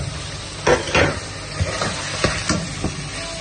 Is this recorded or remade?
recorded